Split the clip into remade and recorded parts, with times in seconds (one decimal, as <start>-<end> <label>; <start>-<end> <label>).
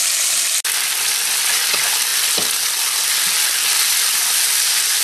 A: 0.0-5.0 recorded